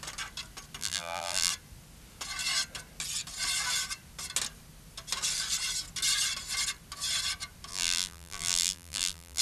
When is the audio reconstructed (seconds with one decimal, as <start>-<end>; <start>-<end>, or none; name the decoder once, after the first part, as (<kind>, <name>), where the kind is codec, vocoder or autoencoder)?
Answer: 0.8-1.5 (vocoder, BigVGAN v2); 7.7-9.4